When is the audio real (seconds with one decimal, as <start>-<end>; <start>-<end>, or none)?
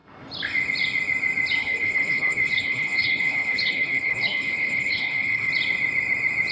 0.0-1.6; 5.5-6.5